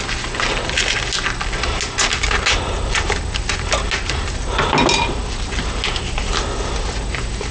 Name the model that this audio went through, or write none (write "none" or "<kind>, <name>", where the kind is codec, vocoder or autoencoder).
none